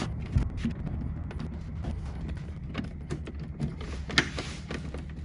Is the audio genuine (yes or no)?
yes